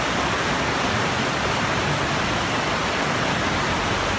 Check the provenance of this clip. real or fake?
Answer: real